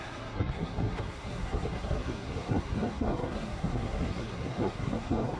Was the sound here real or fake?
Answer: fake